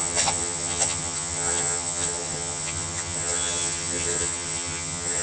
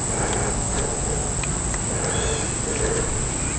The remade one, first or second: first